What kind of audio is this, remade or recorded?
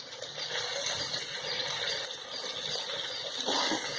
recorded